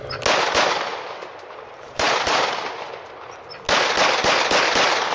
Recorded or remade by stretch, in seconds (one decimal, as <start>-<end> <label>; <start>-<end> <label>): 0.0-1.2 recorded; 1.2-2.5 remade; 2.5-5.1 recorded